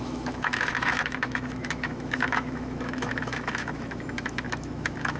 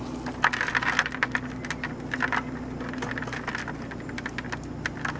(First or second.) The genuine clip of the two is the second